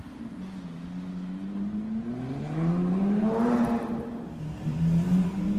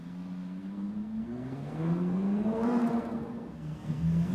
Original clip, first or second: first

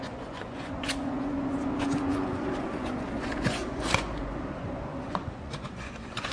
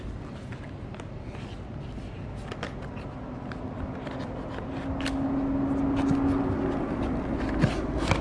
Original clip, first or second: second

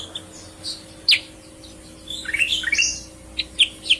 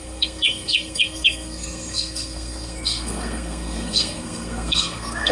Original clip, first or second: first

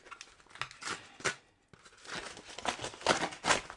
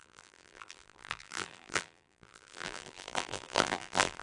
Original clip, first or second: first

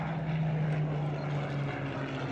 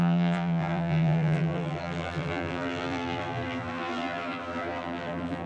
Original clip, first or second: first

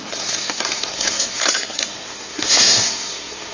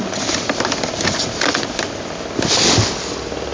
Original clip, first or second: second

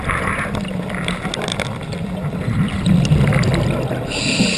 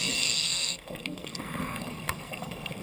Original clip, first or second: first